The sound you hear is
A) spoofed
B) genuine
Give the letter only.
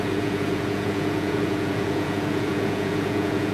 A